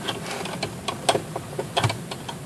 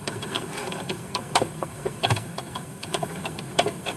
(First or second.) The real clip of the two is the first